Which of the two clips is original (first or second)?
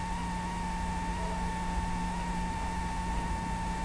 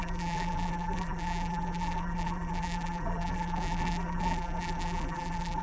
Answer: first